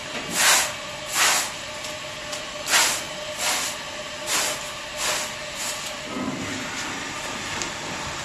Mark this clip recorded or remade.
recorded